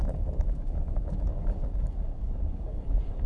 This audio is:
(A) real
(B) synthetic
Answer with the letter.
B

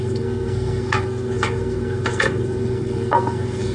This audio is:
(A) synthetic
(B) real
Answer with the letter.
A